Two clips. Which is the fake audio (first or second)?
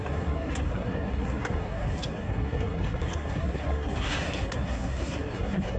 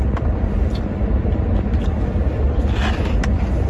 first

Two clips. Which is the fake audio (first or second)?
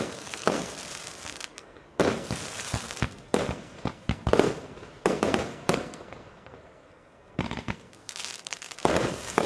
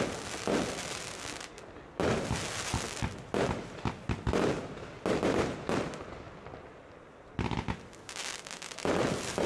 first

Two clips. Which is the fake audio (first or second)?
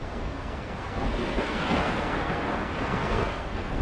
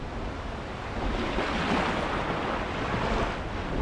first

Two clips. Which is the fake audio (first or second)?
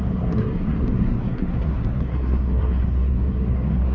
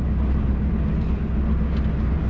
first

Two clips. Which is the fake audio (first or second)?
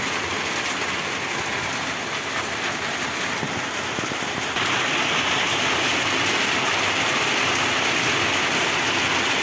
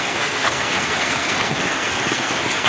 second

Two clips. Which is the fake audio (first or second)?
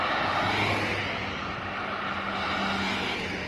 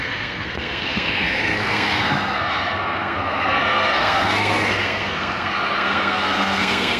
second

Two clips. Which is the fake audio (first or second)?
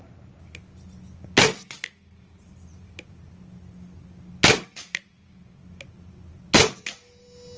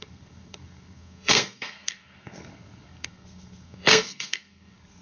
second